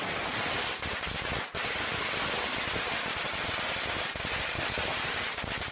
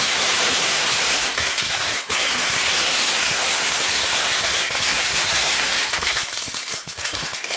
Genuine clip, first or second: first